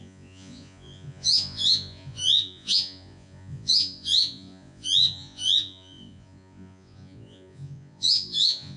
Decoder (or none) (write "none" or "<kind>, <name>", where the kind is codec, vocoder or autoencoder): vocoder, Vocos